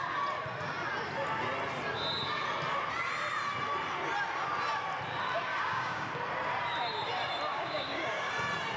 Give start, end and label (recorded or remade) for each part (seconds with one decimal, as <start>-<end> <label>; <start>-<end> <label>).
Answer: 0.0-5.5 recorded; 5.5-6.1 remade; 6.1-7.5 recorded; 7.5-8.3 remade; 8.3-8.8 recorded

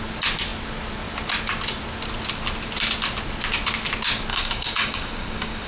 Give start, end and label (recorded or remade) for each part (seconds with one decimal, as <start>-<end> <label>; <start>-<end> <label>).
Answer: 0.0-4.3 recorded; 4.3-5.7 remade

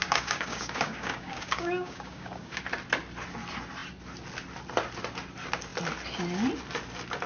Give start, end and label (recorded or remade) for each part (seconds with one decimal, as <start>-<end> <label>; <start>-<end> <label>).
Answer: 0.0-2.6 remade; 2.6-7.3 recorded

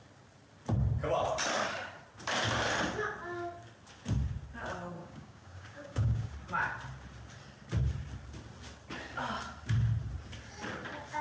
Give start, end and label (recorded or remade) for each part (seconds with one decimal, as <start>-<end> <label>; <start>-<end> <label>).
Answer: 0.0-5.0 recorded; 5.0-6.3 remade; 6.3-11.2 recorded

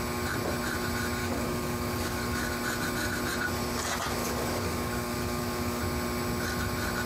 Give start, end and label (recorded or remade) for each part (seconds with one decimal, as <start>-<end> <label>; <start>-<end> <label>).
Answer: 0.0-1.2 recorded; 1.2-2.5 remade; 2.5-4.2 recorded; 4.2-5.8 remade; 5.8-7.1 recorded

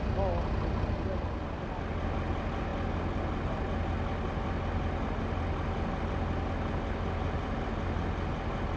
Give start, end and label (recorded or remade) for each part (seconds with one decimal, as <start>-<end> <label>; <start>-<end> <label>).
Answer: 0.0-8.8 recorded

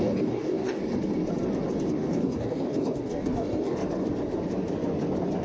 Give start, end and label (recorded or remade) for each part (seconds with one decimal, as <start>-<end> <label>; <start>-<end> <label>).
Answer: 0.0-0.8 remade; 0.8-1.9 recorded; 1.9-3.8 remade; 3.8-5.4 recorded